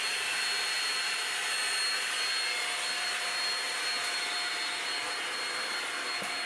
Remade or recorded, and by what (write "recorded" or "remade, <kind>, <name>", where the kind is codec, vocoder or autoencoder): recorded